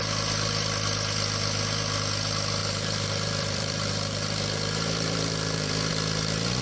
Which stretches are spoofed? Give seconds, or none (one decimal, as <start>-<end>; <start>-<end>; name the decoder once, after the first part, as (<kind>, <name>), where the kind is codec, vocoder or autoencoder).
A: 2.6-5.9 (vocoder, BigVGAN v2)